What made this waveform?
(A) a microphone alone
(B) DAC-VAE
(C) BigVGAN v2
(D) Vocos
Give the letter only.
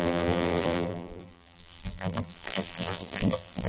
C